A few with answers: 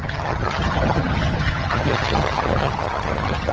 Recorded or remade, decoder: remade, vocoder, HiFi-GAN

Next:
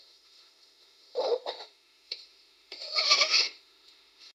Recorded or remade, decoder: remade, autoencoder, DAC-VAE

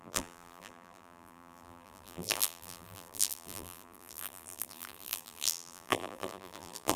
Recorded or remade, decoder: remade, vocoder, BigVGAN v2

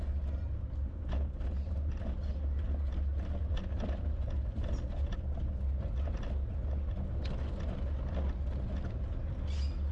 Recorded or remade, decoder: recorded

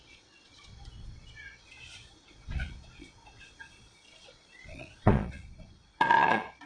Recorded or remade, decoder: remade, vocoder, Vocos